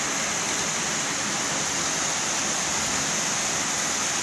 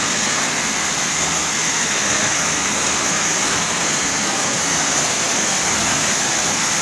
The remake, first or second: second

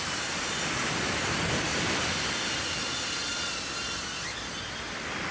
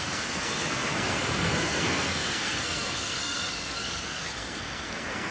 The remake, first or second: second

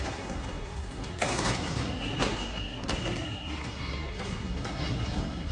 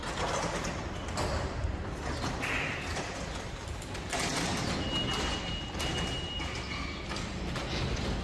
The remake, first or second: first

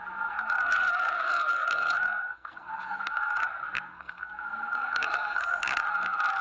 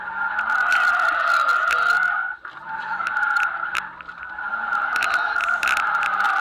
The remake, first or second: first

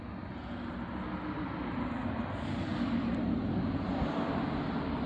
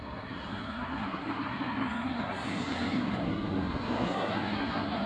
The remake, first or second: second